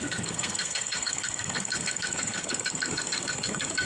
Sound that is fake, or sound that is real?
fake